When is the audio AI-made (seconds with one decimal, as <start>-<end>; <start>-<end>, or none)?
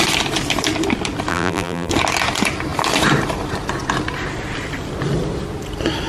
1.3-1.9